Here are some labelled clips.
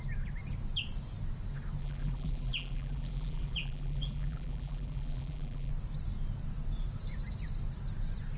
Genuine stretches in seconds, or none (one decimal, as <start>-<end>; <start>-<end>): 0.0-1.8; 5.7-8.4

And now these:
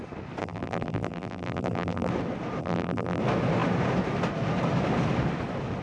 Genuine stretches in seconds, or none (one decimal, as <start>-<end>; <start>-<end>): 0.0-0.4; 2.1-2.6; 3.2-5.8

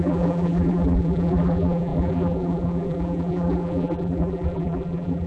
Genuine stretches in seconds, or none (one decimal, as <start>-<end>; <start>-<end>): none

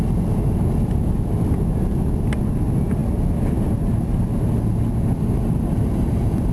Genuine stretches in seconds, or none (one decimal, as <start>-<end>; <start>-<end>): 0.0-6.5